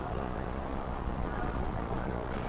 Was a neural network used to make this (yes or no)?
yes